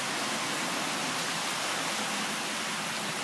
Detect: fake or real real